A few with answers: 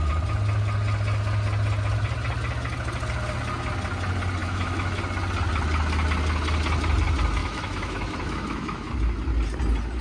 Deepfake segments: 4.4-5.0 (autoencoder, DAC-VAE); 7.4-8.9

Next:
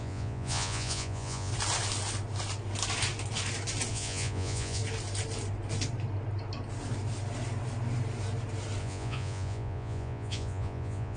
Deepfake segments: 0.0-1.5 (vocoder, Vocos); 3.9-4.8; 8.8-11.2

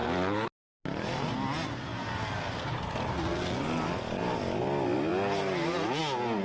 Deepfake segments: none

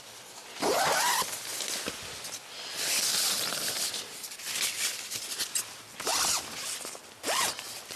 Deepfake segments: 0.4-1.1 (vocoder, BigVGAN v2); 3.1-5.6

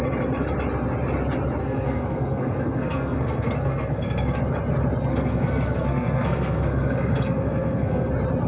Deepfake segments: 1.6-4.4 (codec, SNAC); 5.1-8.1

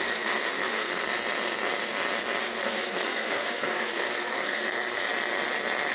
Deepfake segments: 0.0-1.0 (codec, SNAC); 2.4-5.1